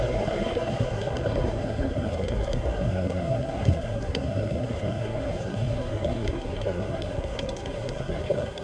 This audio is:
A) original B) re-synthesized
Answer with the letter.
B